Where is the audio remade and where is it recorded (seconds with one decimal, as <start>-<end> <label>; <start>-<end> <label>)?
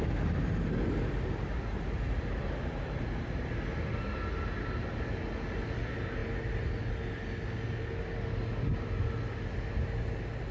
0.0-10.5 recorded